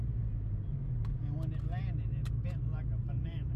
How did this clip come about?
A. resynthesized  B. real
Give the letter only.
B